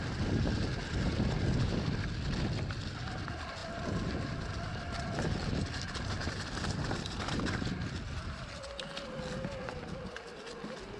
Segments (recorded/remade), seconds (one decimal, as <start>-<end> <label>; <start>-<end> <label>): 0.0-3.6 recorded; 3.6-7.5 remade; 7.5-11.0 recorded